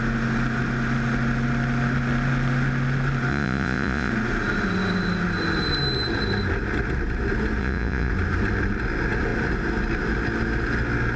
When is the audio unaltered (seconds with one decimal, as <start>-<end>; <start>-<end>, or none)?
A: 0.0-3.3; 4.1-7.6; 8.1-11.2